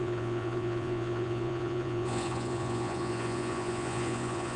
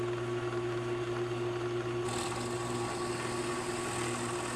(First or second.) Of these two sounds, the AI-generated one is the first